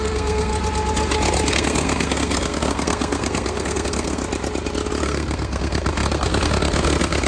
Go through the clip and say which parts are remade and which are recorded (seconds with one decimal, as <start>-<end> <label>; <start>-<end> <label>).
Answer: 0.0-0.5 remade; 0.5-1.5 recorded; 1.5-4.2 remade; 4.2-5.0 recorded; 5.0-7.3 remade